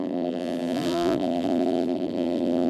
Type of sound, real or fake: fake